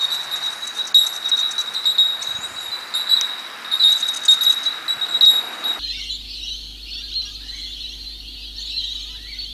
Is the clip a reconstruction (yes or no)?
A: no